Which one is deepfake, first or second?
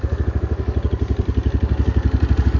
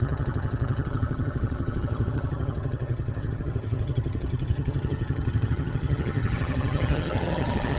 second